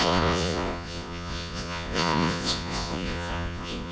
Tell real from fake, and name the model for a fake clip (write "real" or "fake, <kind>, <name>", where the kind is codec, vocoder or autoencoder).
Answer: fake, vocoder, Vocos